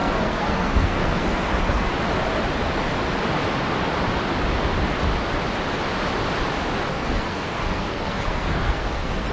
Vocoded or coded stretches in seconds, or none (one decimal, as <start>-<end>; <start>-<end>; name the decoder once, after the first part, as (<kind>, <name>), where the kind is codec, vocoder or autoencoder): 0.0-1.9 (codec, SNAC); 6.9-9.3